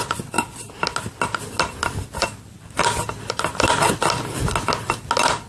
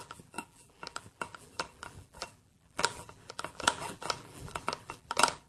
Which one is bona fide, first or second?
first